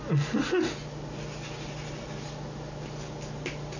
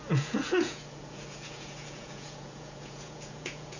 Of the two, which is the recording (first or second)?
first